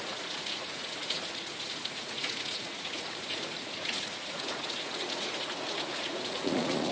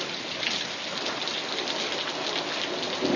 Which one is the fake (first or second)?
first